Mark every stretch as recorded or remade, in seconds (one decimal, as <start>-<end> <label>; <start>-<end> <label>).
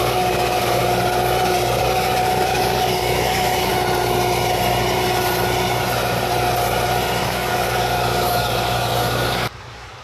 0.0-0.8 remade; 0.8-1.8 recorded; 1.8-3.7 remade; 3.7-7.2 recorded; 7.2-10.0 remade